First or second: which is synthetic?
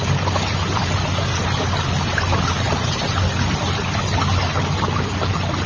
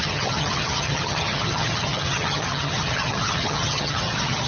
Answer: second